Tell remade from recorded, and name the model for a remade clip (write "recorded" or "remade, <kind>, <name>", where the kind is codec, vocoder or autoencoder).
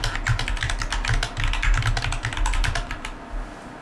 recorded